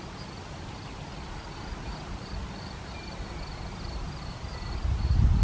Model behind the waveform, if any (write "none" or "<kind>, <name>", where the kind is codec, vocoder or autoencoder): none